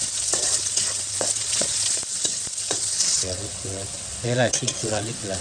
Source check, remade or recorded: remade